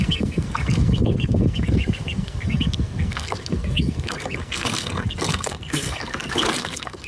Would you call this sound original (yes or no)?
no